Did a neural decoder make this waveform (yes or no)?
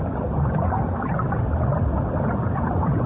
no